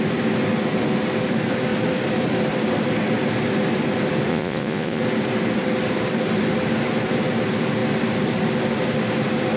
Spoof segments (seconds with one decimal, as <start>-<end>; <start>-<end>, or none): 4.3-5.0